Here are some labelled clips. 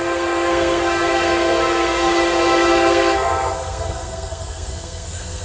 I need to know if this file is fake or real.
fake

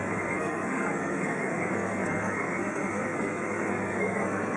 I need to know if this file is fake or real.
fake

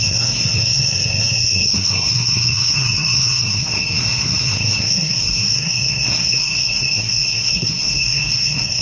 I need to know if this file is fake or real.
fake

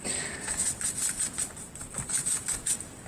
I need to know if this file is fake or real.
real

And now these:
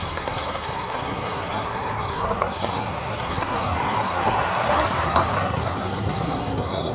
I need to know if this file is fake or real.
fake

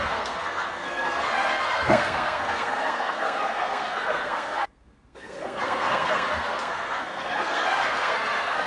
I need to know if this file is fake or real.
fake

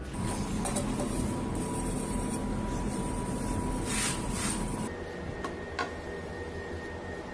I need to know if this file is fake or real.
real